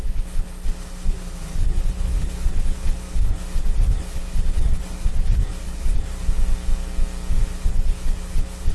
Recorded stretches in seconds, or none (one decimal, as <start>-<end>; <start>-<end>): 6.2-7.5